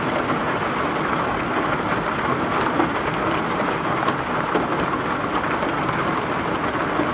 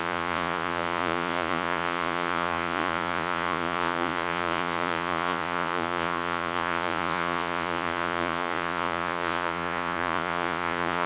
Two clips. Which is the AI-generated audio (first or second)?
second